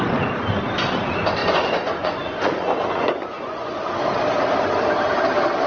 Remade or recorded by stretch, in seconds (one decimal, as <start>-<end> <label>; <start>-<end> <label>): 0.0-1.4 recorded; 1.4-3.9 remade; 3.9-5.7 recorded